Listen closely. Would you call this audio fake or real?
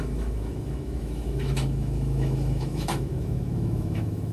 fake